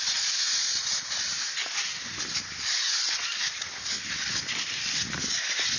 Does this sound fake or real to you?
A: fake